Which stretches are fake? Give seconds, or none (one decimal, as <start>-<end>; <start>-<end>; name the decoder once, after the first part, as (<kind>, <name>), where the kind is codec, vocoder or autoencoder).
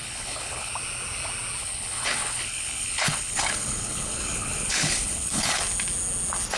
0.0-0.7 (codec, HILCodec); 1.6-5.6